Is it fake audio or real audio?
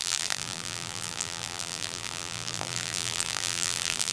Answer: fake